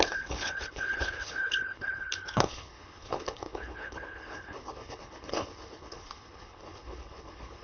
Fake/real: fake